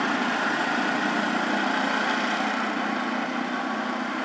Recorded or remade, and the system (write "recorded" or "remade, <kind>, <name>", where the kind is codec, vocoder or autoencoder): recorded